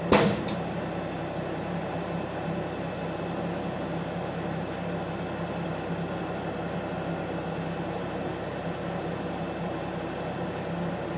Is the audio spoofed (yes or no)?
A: no